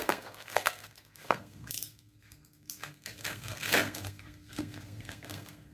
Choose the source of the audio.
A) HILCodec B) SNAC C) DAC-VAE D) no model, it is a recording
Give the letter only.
B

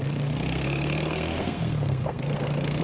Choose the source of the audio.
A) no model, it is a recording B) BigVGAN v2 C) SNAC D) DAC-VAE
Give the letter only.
C